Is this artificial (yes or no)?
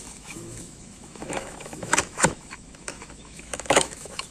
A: yes